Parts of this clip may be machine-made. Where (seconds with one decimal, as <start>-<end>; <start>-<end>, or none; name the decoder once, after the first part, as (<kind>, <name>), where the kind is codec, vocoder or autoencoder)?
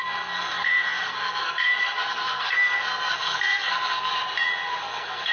0.0-4.1 (codec, SNAC); 4.8-5.3